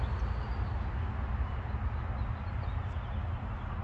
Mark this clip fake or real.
real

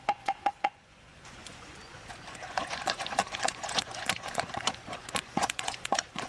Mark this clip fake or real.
fake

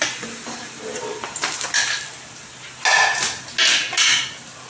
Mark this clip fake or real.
real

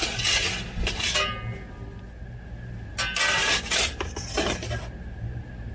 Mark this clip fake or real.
real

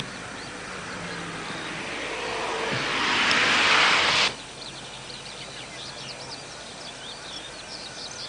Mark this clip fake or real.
real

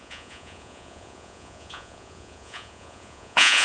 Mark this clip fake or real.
fake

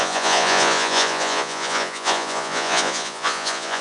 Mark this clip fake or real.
fake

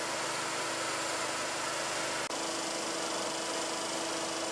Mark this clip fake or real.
real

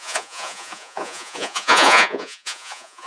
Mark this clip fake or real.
fake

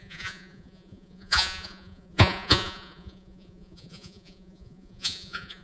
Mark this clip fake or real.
fake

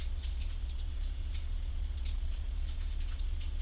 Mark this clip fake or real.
fake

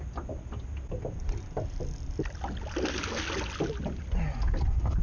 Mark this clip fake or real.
real